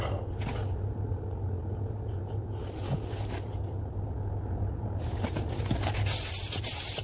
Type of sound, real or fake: real